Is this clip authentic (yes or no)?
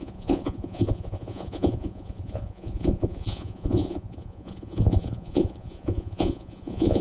no